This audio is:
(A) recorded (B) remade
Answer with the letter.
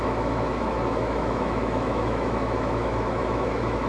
B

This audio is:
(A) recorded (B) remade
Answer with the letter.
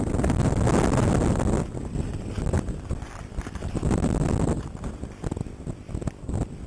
A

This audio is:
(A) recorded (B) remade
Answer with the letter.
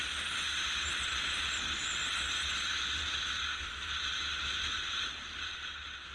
A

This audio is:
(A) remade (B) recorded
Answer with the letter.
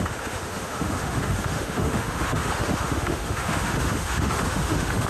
A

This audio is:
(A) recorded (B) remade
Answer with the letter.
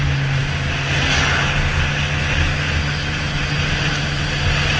A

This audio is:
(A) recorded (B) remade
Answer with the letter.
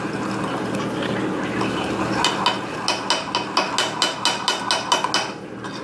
A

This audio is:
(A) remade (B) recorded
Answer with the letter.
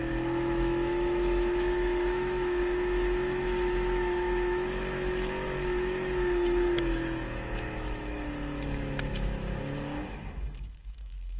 A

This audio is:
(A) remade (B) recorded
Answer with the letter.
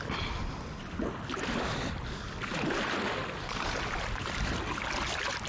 B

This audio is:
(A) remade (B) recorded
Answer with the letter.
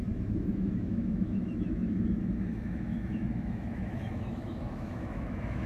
A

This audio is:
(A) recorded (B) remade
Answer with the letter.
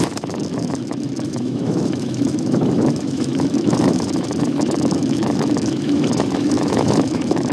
B